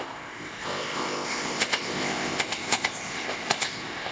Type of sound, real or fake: fake